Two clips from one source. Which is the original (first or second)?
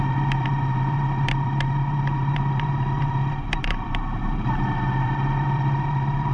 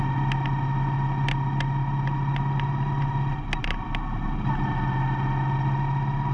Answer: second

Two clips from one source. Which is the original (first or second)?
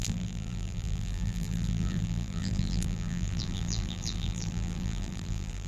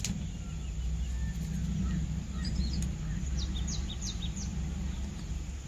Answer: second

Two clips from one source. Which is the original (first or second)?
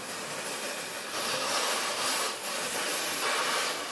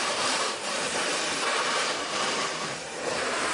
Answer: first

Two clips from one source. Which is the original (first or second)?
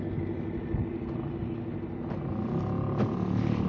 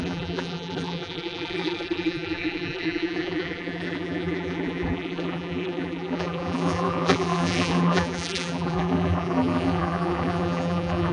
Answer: first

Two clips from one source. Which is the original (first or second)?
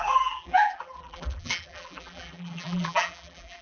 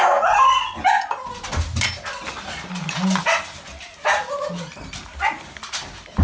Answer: second